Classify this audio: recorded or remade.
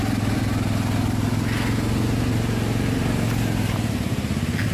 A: recorded